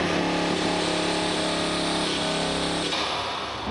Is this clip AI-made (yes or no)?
no